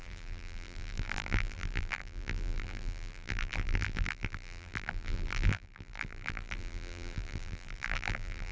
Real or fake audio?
fake